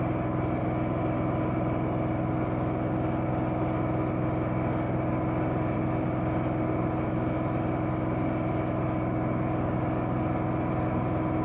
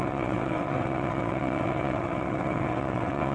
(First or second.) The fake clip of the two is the second